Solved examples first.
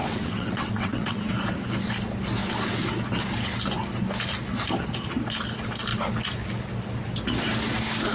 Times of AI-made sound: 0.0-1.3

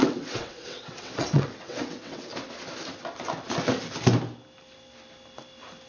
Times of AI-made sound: 0.0-2.3

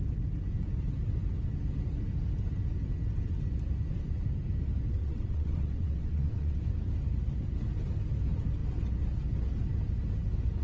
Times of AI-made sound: 5.0-6.6

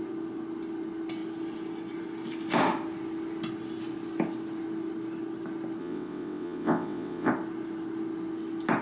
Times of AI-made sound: 5.8-7.3

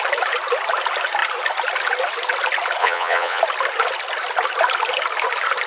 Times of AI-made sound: 2.8-3.4